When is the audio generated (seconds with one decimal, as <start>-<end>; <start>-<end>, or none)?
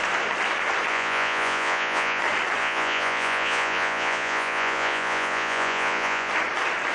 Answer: 0.9-2.2; 2.6-6.3